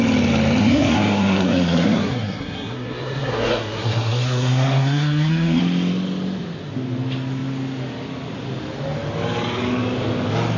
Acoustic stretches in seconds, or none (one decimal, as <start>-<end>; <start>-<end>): 0.0-0.6; 5.6-10.6